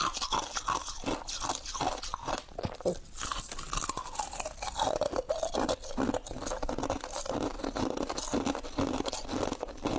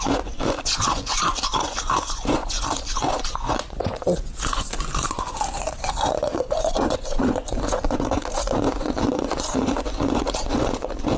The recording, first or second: first